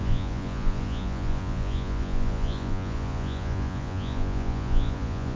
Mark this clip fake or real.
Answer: fake